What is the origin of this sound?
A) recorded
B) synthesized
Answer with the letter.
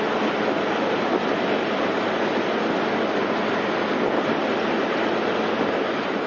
A